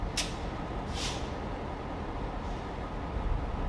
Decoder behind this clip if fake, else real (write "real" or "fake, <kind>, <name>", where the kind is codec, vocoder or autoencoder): real